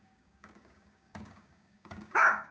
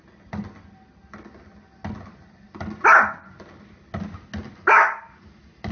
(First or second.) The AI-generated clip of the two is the first